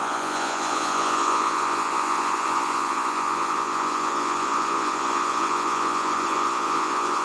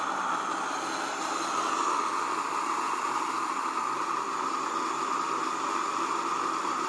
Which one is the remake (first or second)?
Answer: first